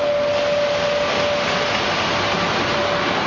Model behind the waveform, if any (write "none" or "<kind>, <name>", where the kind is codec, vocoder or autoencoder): none